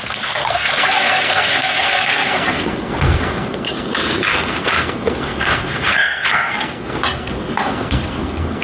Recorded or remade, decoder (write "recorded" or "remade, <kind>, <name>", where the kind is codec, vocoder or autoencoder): remade, codec, SNAC